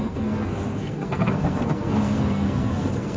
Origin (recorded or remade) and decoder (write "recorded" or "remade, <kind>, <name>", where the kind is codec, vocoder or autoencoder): remade, codec, SNAC